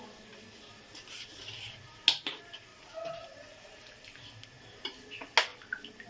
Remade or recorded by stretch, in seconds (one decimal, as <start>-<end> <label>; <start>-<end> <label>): 0.0-2.7 recorded; 2.7-4.2 remade; 4.2-6.1 recorded